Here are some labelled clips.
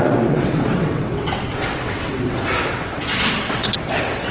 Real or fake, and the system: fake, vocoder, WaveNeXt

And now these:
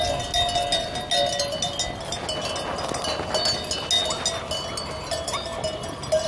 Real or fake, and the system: real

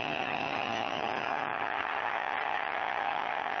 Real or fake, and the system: fake, vocoder, HiFi-GAN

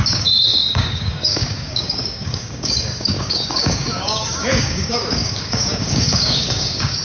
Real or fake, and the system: fake, codec, DAC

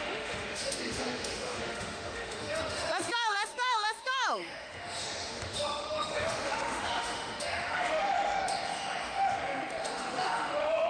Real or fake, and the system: fake, autoencoder, DAC-VAE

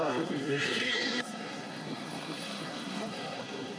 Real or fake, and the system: fake, codec, SNAC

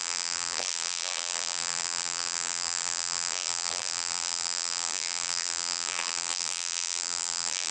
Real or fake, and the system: fake, vocoder, BigVGAN v2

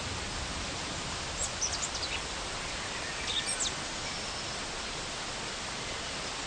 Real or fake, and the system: real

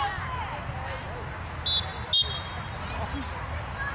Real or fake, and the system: real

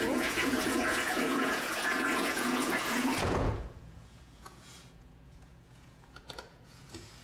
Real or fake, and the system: fake, vocoder, Vocos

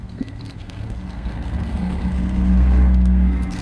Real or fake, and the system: fake, codec, SNAC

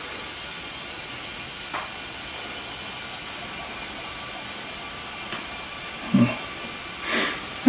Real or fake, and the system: real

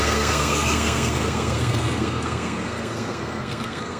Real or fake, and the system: fake, codec, SNAC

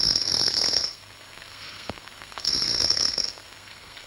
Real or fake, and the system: fake, codec, SNAC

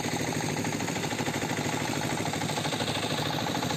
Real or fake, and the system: real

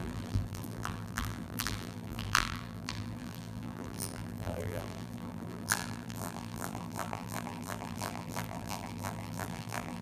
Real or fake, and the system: fake, vocoder, BigVGAN v2